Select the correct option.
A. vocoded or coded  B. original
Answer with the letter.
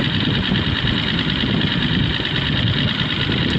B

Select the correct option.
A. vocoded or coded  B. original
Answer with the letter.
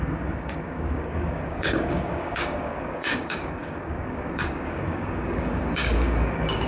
A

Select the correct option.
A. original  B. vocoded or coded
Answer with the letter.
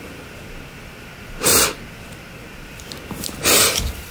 A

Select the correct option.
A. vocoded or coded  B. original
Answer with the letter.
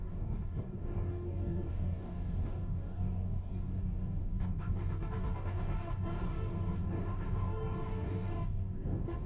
A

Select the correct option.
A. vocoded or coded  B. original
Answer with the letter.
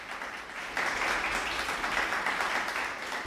B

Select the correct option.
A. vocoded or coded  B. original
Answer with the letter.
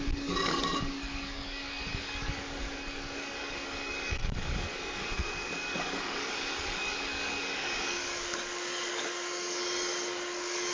A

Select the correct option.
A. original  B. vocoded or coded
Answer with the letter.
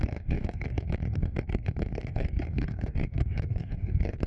B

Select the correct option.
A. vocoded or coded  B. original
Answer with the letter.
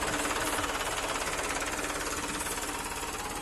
B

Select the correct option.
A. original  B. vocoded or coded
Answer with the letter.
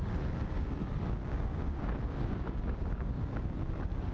B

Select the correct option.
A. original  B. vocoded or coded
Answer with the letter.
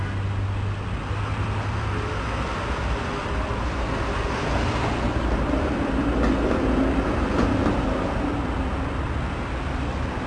A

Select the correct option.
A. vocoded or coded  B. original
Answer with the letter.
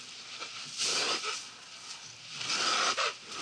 B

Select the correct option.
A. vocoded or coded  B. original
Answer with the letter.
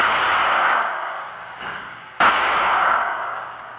A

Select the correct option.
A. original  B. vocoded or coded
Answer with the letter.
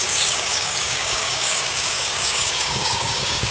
B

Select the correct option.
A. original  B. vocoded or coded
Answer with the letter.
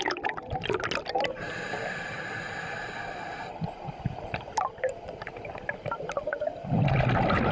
A